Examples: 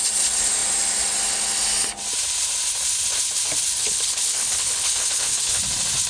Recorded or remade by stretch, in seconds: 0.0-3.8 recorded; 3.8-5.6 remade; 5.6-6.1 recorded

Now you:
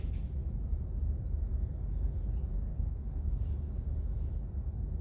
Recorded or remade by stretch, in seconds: 0.0-2.7 recorded; 2.7-3.3 remade; 3.3-5.0 recorded